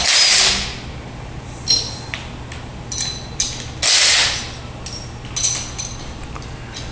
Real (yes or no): yes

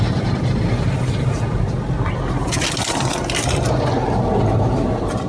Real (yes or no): yes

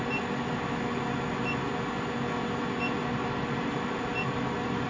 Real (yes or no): yes